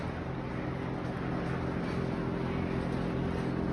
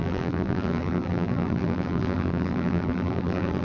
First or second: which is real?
first